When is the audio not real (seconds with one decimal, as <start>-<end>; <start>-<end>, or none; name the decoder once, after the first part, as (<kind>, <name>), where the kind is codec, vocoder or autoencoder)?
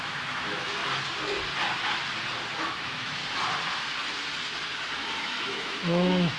0.0-0.8 (autoencoder, DAC-VAE); 2.6-3.2; 5.2-6.4